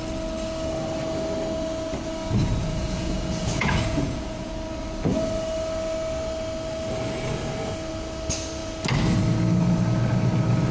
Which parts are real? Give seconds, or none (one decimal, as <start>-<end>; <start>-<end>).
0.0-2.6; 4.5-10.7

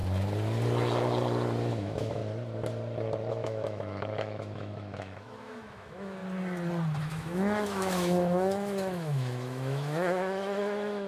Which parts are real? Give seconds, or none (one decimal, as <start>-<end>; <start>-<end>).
0.0-1.7; 2.2-3.3; 6.2-7.0

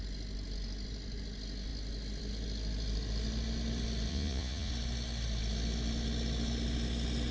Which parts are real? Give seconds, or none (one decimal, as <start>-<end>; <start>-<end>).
0.0-4.1; 4.7-7.3

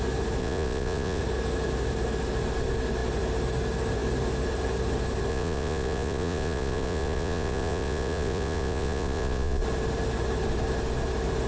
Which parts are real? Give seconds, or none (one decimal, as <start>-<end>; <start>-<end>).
0.0-0.4; 1.2-5.3; 9.6-11.5